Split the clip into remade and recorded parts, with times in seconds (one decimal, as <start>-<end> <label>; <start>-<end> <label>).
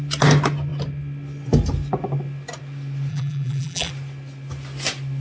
0.0-3.1 recorded; 3.1-3.9 remade; 3.9-5.2 recorded